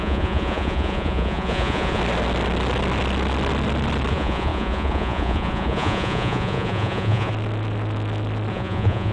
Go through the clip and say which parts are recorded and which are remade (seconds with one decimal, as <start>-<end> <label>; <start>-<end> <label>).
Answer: 0.0-2.0 remade; 2.0-4.1 recorded; 4.1-7.3 remade; 7.3-8.5 recorded; 8.5-9.1 remade